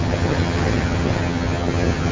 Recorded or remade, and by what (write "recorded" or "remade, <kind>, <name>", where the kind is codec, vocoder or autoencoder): remade, vocoder, HiFi-GAN